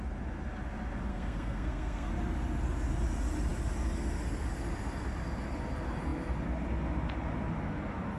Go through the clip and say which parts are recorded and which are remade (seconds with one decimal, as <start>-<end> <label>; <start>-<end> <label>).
0.0-1.1 recorded; 1.1-2.1 remade; 2.1-8.2 recorded